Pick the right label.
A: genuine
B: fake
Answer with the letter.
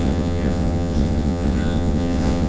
B